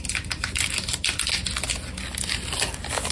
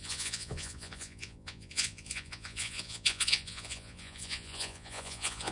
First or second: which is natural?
first